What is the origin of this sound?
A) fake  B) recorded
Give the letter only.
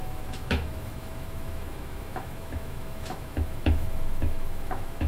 A